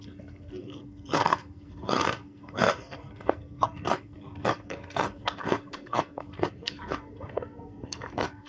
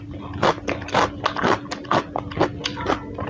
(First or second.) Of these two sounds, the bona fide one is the second